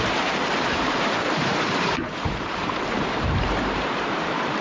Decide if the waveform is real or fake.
fake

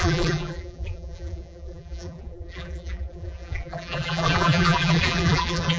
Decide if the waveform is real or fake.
fake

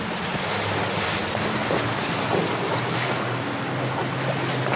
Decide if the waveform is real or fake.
real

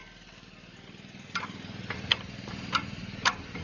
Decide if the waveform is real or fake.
real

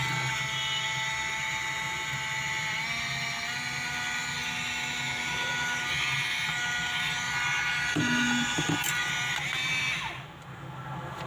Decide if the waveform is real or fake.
real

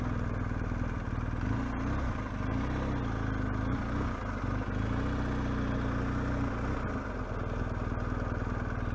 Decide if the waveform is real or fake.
real